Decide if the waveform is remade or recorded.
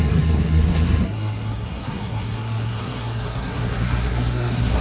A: remade